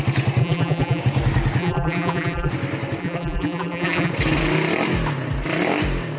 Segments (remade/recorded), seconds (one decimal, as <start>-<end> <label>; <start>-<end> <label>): 0.0-0.4 recorded; 0.4-1.0 remade; 1.0-1.6 recorded; 1.6-2.5 remade; 2.5-3.0 recorded; 3.0-4.1 remade; 4.1-6.2 recorded